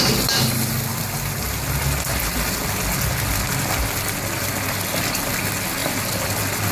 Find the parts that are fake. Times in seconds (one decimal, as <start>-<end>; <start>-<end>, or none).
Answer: none